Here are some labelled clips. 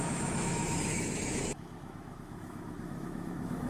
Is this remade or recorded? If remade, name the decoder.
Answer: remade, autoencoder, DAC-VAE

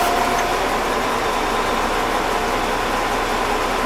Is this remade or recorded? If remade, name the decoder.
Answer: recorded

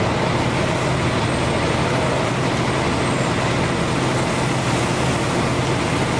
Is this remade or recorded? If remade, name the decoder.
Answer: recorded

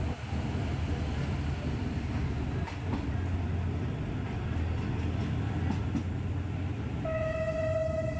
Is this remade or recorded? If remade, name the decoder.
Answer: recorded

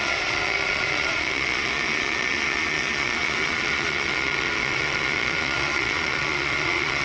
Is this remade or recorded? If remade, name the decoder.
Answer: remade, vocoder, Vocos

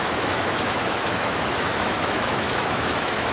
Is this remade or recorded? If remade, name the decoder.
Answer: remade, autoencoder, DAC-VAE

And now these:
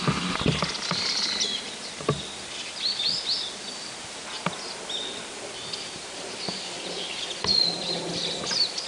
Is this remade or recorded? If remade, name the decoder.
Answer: recorded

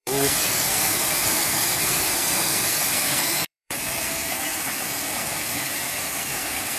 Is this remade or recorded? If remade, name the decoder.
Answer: remade, codec, SNAC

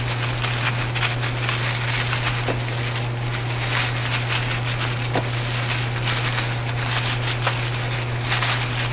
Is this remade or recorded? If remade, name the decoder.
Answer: recorded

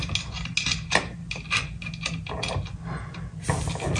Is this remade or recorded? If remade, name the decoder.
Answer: recorded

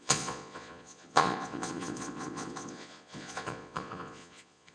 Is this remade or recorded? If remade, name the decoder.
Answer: remade, vocoder, Vocos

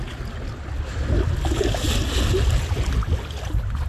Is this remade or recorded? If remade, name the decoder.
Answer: recorded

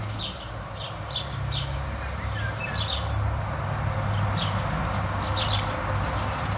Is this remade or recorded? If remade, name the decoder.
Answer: recorded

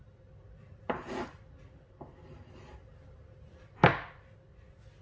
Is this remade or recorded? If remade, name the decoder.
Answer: recorded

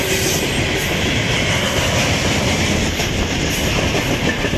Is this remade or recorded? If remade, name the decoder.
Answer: recorded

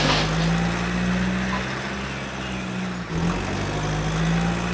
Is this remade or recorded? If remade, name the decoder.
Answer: recorded